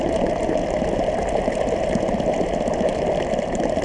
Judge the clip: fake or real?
real